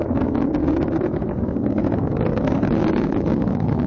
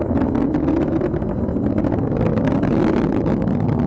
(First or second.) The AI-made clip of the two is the first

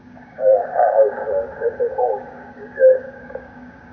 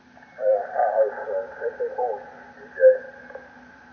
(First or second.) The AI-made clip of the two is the first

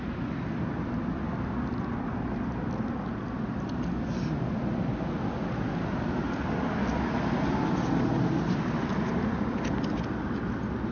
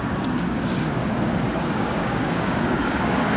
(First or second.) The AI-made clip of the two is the second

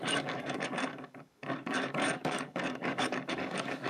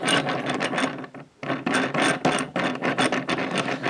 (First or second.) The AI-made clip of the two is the first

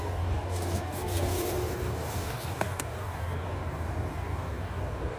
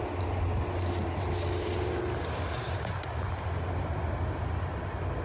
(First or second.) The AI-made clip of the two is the first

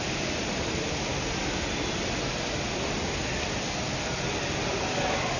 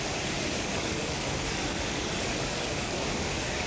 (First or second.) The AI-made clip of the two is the second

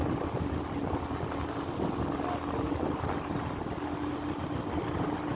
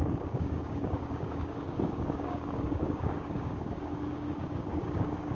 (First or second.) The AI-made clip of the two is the second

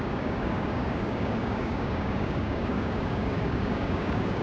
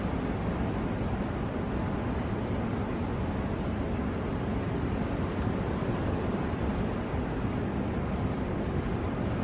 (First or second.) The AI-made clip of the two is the first